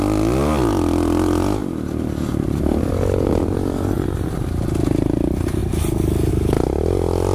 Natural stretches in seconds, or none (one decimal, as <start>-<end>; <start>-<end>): 0.0-7.3